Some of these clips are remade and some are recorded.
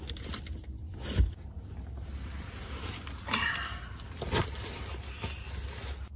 recorded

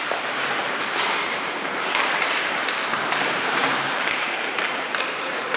remade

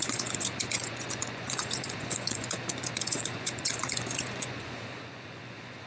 remade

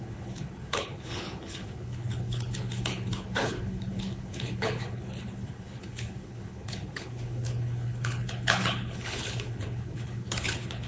remade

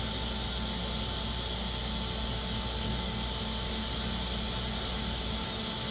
recorded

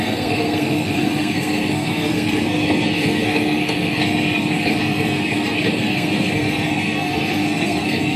remade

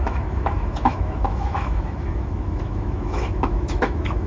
remade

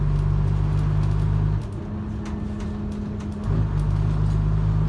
recorded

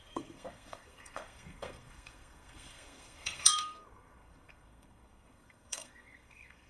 remade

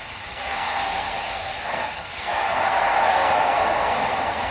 remade